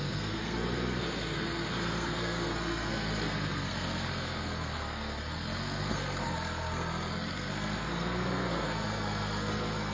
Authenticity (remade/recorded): remade